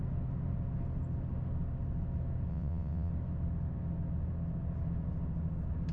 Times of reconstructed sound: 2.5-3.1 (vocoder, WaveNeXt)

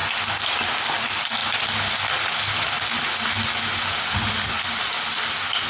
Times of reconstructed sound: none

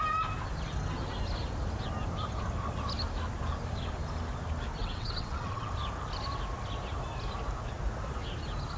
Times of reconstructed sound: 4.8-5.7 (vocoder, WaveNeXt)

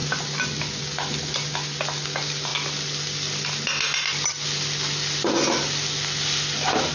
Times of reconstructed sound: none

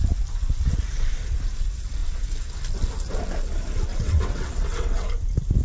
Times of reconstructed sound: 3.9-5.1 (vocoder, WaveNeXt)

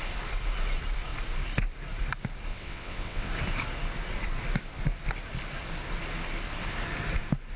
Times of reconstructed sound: 2.5-3.3 (vocoder, WaveNeXt)